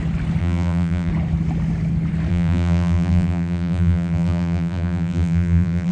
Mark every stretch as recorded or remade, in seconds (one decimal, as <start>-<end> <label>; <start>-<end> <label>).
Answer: 0.0-0.4 recorded; 0.4-1.1 remade; 1.1-2.3 recorded; 2.3-5.9 remade